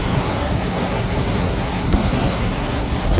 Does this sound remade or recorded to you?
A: remade